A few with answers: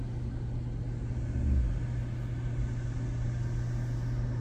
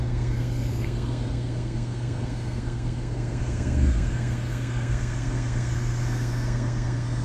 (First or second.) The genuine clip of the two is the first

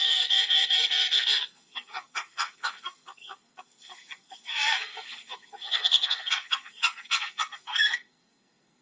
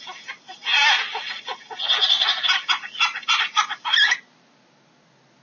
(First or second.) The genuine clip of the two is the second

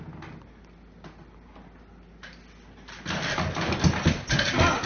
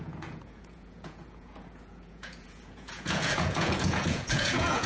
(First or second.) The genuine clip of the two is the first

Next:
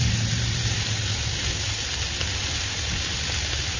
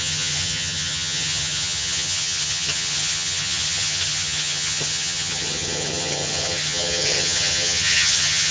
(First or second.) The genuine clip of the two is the first